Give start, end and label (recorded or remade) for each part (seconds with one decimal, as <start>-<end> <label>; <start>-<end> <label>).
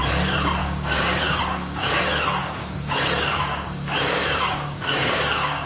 0.0-0.6 recorded; 0.6-2.0 remade; 2.0-2.4 recorded; 2.4-5.7 remade